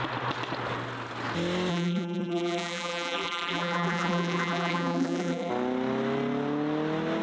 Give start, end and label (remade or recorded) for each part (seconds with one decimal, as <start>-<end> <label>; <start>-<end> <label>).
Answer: 0.0-1.7 recorded; 1.7-5.5 remade; 5.5-7.2 recorded